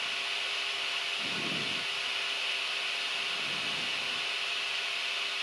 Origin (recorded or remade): recorded